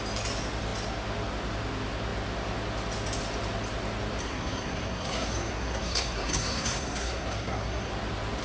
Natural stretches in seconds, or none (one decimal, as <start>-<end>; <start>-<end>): 0.0-4.2; 7.9-8.4